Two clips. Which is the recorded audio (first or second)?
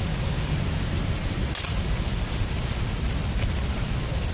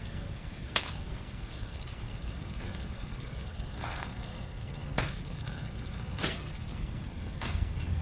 first